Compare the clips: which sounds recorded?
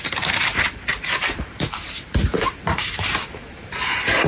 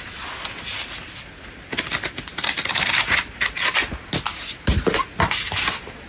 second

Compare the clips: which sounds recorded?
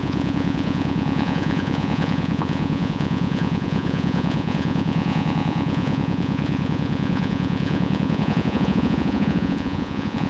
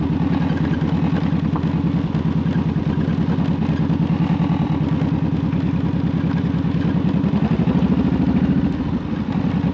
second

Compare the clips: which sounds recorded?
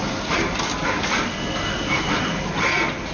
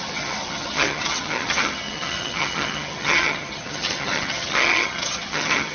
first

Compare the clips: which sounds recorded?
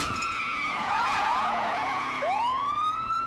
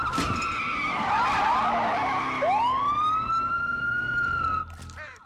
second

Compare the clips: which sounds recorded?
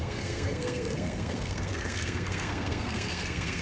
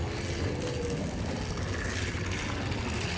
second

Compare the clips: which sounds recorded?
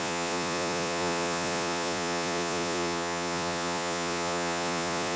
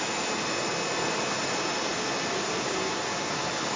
second